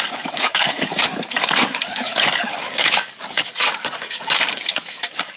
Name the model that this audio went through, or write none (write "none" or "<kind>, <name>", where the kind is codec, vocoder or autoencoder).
codec, DAC